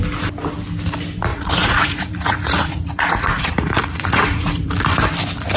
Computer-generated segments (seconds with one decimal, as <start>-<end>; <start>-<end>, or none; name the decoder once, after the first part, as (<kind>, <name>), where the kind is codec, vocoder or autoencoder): 1.3-4.7 (vocoder, Vocos)